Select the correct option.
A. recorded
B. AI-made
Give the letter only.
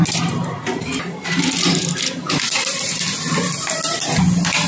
A